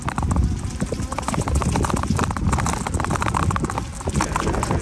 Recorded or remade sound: recorded